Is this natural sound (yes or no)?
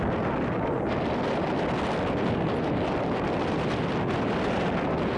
yes